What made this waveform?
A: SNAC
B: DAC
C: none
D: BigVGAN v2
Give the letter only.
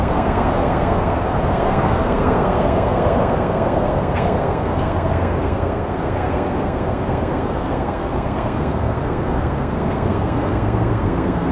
A